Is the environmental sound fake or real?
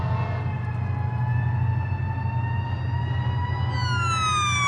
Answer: real